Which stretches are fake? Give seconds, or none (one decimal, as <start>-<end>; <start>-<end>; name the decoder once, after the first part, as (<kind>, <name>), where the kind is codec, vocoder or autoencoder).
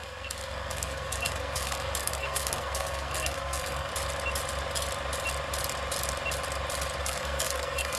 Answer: 0.0-3.9 (codec, SNAC); 7.0-8.0